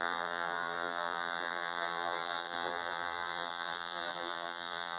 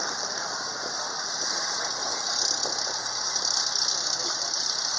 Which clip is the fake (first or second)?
first